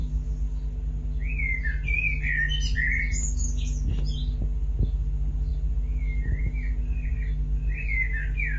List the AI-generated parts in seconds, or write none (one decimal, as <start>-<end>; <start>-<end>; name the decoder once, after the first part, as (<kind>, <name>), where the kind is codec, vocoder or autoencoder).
none